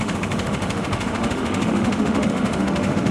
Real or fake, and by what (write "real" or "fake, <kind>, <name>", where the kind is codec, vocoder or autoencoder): fake, autoencoder, DAC-VAE